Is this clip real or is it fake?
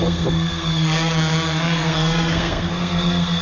fake